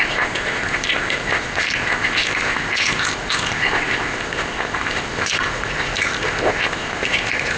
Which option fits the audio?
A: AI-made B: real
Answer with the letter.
A